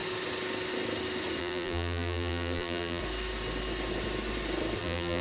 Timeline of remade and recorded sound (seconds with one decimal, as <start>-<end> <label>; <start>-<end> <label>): 0.0-1.4 recorded; 1.4-3.0 remade; 3.0-4.8 recorded; 4.8-5.2 remade